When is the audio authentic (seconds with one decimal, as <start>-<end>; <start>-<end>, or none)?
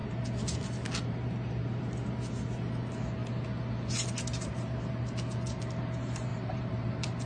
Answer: 0.0-6.3